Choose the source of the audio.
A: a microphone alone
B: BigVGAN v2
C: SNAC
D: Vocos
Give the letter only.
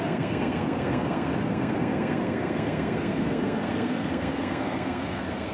C